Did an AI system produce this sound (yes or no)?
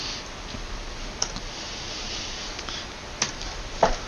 no